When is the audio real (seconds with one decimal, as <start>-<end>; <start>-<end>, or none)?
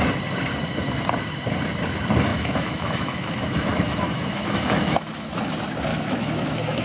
0.0-2.3; 5.5-5.9